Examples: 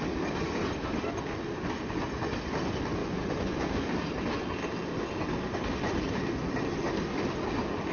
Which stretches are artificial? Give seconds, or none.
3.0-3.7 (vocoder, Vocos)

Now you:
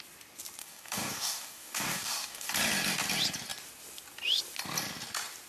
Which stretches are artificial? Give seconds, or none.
0.6-2.5 (codec, DAC)

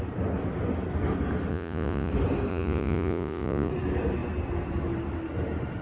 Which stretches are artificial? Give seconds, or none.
1.5-2.1 (vocoder, Vocos); 2.5-3.7

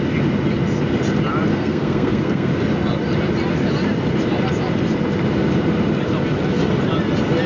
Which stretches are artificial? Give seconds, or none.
1.5-2.5 (codec, SNAC)

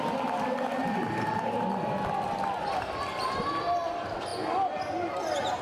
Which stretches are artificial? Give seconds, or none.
0.8-1.4 (vocoder, BigVGAN v2)

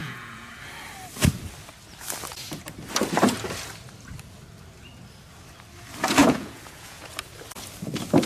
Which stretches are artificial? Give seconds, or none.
0.0-0.5 (vocoder, Vocos); 6.2-7.1

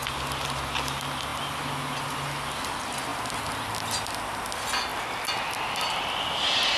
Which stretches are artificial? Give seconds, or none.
none